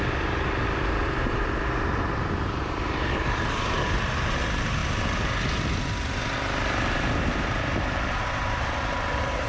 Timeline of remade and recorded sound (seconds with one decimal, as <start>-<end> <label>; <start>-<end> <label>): 0.0-4.8 remade; 4.8-6.9 recorded; 6.9-9.5 remade